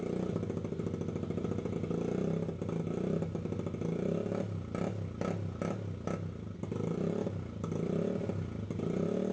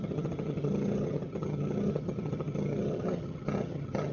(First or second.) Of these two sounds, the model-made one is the second